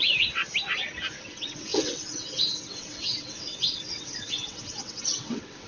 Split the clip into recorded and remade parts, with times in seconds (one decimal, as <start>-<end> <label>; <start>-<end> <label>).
0.0-0.4 remade; 0.4-1.2 recorded; 1.2-5.7 remade